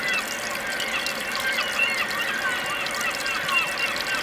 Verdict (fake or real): real